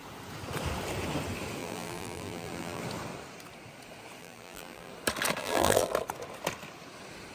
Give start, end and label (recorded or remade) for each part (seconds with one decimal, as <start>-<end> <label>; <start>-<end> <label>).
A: 0.0-1.6 recorded; 1.6-2.8 remade; 2.8-4.2 recorded; 4.2-4.9 remade; 4.9-5.4 recorded; 5.4-5.9 remade; 5.9-7.3 recorded